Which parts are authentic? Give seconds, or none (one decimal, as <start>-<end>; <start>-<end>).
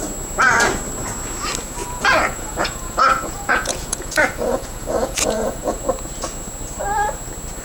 0.0-1.8; 5.8-7.6